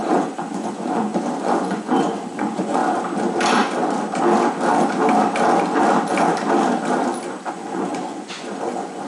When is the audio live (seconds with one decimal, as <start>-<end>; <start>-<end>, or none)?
2.8-7.5